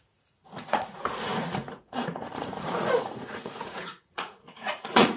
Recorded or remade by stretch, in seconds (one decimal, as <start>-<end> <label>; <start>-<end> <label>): 0.0-5.2 remade